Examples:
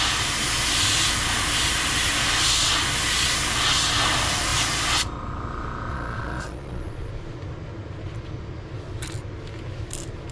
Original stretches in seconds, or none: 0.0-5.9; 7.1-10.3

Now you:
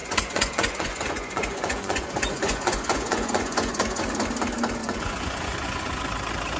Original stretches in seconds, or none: 4.0-4.8; 6.0-6.6

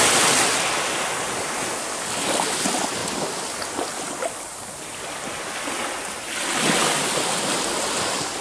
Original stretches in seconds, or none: 0.0-8.4